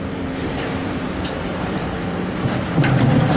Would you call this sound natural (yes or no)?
no